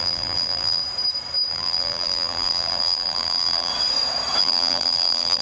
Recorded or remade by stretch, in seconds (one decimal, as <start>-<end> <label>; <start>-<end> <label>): 0.0-0.8 remade; 0.8-1.5 recorded; 1.5-3.7 remade; 3.7-4.4 recorded; 4.4-5.4 remade